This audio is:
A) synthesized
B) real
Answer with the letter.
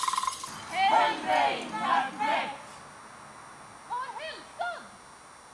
B